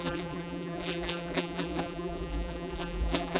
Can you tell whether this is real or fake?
fake